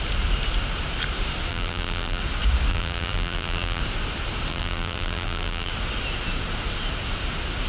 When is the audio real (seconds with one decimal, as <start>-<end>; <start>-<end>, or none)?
0.0-1.5; 2.2-2.7; 3.8-4.5; 5.7-7.7